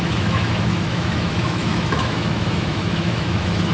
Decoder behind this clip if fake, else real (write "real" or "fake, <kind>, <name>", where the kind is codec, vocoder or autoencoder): fake, autoencoder, DAC-VAE